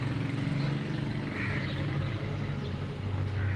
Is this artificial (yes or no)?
no